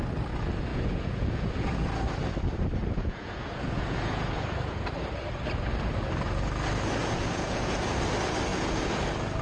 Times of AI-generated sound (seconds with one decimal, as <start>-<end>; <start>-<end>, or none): 0.7-1.7; 2.8-4.9; 7.0-7.9; 8.5-9.0